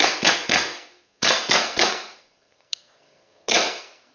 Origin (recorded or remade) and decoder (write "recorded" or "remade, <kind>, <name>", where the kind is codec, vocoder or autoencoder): remade, codec, SNAC